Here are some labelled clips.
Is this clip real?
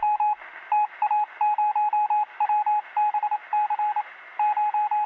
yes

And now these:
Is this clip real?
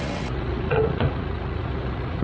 no